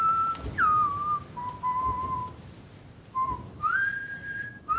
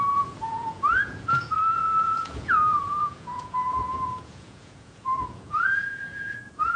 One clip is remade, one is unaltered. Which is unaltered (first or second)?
first